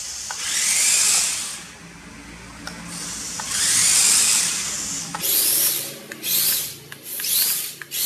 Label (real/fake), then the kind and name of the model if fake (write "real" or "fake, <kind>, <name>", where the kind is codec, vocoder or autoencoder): real